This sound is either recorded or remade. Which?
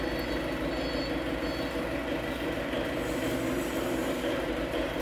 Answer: recorded